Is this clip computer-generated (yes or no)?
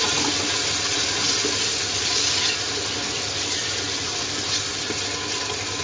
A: no